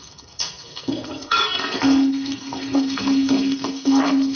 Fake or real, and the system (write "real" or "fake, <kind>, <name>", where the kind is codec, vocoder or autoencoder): fake, codec, SNAC